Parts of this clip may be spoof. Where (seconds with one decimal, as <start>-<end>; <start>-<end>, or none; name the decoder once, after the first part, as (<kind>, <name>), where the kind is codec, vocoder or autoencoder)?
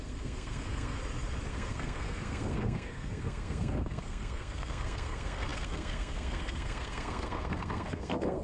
0.0-1.0 (codec, SNAC); 1.5-8.4